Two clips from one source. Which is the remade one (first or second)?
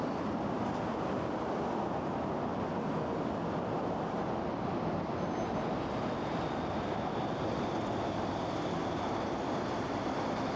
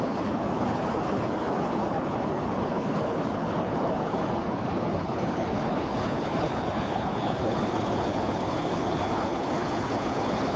second